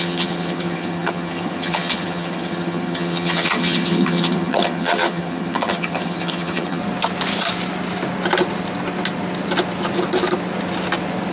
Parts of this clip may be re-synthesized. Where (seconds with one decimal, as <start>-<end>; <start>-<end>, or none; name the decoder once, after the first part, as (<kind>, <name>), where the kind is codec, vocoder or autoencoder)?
0.0-6.8 (vocoder, HiFi-GAN)